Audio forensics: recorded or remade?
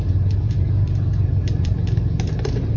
remade